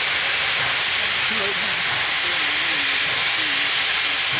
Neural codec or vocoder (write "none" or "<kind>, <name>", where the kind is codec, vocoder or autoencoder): none